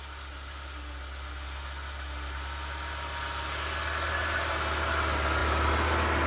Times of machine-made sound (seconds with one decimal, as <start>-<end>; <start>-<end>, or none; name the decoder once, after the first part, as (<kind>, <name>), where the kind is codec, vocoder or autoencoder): none